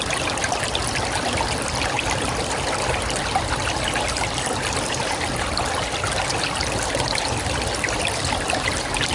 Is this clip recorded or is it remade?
recorded